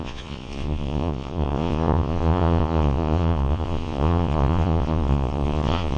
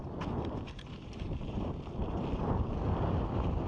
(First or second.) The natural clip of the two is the second